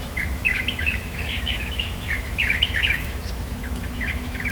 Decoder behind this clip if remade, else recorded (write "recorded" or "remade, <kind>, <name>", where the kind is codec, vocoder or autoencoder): remade, autoencoder, DAC-VAE